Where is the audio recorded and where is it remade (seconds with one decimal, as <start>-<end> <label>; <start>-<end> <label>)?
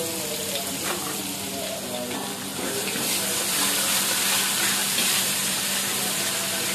0.0-0.4 recorded; 0.4-1.2 remade; 1.2-4.8 recorded; 4.8-6.1 remade; 6.1-6.7 recorded